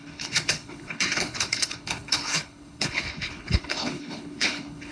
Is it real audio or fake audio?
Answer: fake